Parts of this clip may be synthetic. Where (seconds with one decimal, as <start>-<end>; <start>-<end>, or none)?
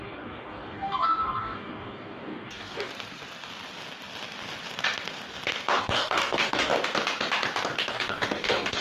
0.0-2.9; 5.8-6.7; 7.9-8.8